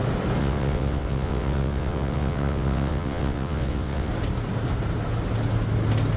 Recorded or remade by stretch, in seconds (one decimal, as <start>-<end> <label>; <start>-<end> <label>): 0.0-0.4 recorded; 0.4-4.1 remade; 4.1-6.2 recorded